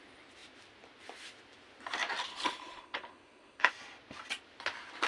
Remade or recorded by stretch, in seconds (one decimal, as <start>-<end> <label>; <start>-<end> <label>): 0.0-2.3 recorded; 2.3-3.7 remade; 3.7-5.1 recorded